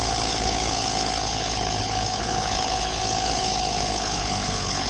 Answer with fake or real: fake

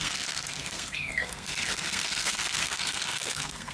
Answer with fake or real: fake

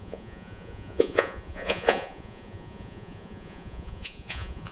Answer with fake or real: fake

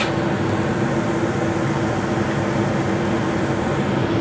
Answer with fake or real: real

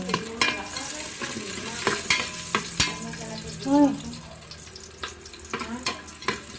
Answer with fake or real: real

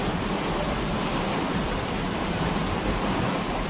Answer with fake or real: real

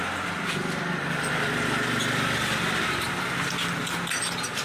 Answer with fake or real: real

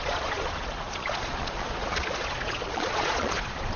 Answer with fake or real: fake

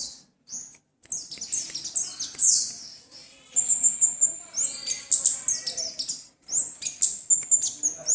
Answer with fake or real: real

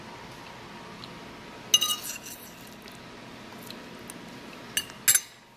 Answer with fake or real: real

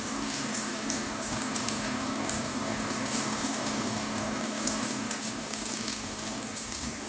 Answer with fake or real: fake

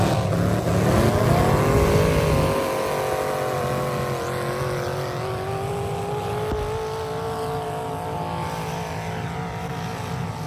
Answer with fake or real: real